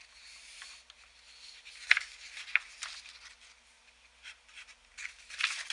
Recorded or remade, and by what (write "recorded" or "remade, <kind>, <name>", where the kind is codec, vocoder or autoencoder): recorded